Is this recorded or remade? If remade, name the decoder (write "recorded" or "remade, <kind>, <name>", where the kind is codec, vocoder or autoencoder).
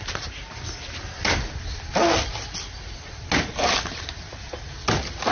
recorded